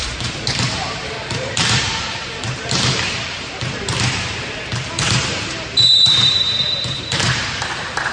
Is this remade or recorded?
remade